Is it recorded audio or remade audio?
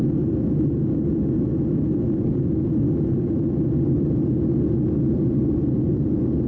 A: recorded